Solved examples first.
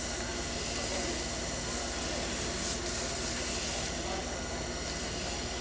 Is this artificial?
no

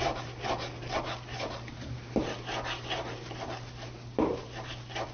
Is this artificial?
no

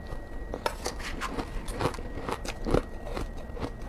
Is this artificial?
no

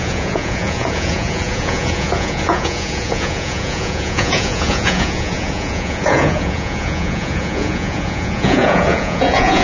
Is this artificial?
yes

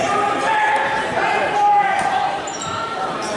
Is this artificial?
yes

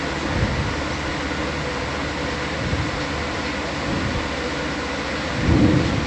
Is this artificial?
no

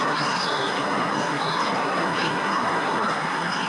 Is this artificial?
yes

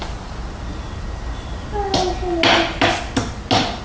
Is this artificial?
no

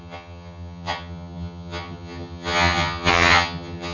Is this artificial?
yes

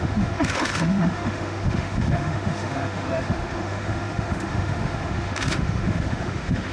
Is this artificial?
yes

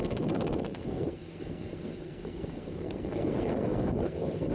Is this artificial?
yes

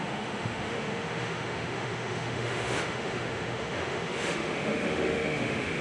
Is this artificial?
yes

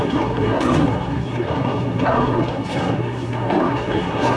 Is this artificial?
yes